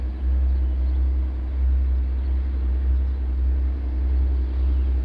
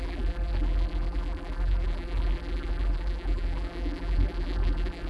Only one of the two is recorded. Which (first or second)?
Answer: first